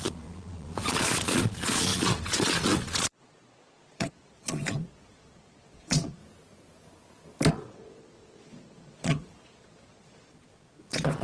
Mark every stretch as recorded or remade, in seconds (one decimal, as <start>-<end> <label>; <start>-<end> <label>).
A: 0.0-6.2 remade; 6.2-7.5 recorded; 7.5-11.2 remade